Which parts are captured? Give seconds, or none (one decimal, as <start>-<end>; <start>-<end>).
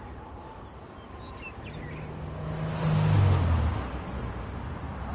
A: 0.0-5.1